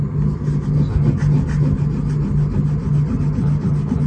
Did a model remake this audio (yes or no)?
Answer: no